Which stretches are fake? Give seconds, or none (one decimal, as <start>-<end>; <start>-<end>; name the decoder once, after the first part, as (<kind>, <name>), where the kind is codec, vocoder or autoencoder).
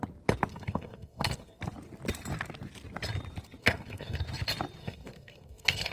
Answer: 0.5-1.6 (codec, SNAC); 3.6-4.2; 4.8-5.9